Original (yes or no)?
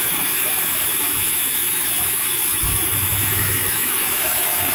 no